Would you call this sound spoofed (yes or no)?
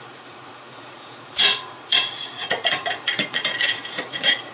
yes